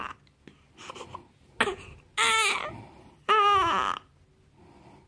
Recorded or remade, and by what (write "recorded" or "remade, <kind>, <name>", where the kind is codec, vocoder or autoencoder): recorded